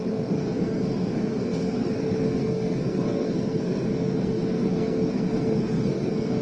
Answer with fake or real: fake